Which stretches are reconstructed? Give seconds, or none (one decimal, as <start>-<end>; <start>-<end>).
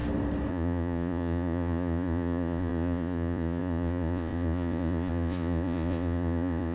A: 0.5-6.7